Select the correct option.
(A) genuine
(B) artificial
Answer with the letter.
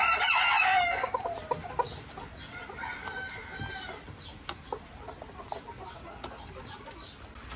A